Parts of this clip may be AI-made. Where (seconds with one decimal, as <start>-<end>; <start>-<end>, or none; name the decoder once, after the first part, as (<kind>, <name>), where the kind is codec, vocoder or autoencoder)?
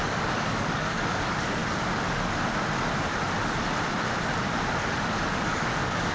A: 0.0-1.6 (codec, DAC); 5.3-6.1